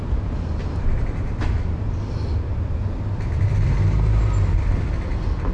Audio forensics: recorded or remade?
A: recorded